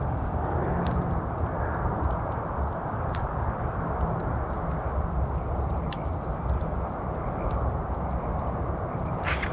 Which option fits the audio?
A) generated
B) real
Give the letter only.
B